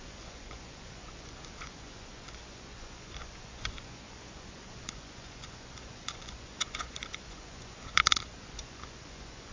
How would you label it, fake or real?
fake